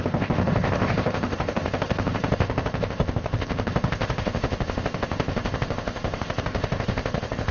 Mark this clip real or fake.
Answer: fake